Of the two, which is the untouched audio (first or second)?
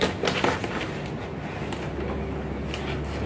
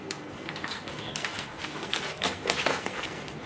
first